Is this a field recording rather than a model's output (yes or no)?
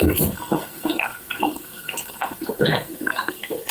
no